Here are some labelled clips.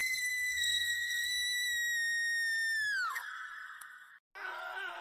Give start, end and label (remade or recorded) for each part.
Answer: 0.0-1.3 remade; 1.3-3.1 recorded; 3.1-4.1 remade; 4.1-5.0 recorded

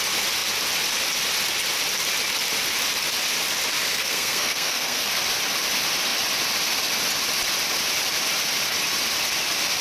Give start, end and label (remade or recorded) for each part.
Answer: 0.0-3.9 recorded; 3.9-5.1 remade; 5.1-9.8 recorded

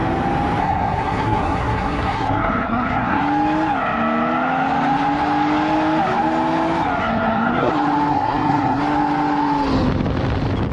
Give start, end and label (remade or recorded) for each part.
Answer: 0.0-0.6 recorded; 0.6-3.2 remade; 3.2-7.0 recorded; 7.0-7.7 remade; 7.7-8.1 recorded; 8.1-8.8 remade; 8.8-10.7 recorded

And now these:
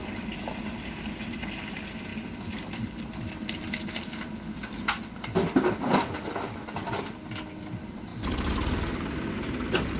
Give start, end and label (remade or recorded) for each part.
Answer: 0.0-10.0 recorded

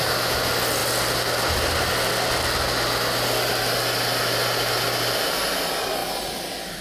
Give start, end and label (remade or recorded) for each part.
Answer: 0.0-6.8 recorded

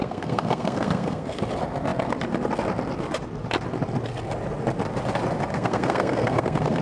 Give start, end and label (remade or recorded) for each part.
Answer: 0.0-1.4 remade; 1.4-5.5 recorded; 5.5-6.8 remade

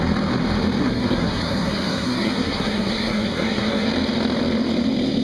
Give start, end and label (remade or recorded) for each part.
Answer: 0.0-0.8 recorded; 0.8-3.9 remade; 3.9-5.2 recorded